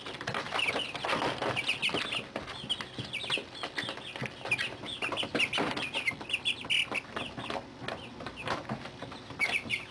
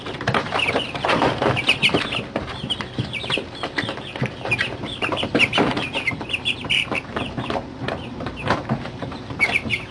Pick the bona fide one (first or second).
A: first